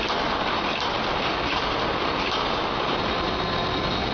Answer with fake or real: real